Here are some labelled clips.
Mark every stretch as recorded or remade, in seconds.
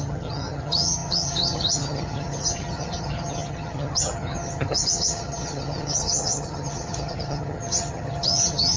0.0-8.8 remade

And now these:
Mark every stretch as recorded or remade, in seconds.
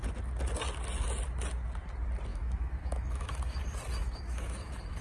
0.0-2.3 recorded; 2.3-3.6 remade; 3.6-4.0 recorded; 4.0-5.0 remade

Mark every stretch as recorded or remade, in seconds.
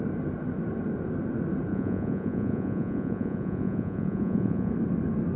0.0-1.7 recorded; 1.7-4.7 remade; 4.7-5.4 recorded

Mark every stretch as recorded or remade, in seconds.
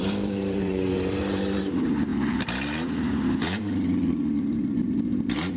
0.0-5.6 remade